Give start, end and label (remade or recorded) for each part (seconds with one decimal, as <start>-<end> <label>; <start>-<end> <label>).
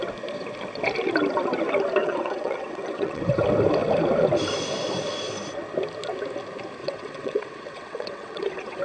0.0-2.0 recorded; 2.0-3.2 remade; 3.2-6.8 recorded; 6.8-8.8 remade